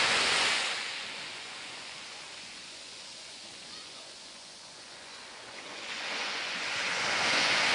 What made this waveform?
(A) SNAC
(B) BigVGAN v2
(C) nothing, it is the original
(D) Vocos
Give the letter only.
D